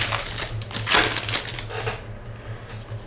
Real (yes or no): yes